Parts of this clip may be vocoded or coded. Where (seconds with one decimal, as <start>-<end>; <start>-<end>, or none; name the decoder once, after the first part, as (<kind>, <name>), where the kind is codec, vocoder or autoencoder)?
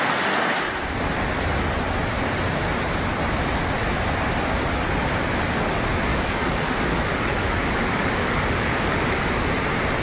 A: 6.1-9.2 (codec, DAC)